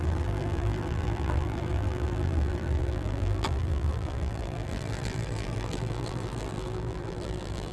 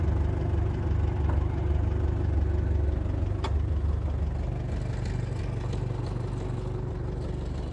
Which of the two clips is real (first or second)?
second